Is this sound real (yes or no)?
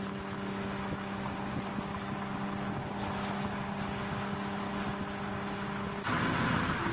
yes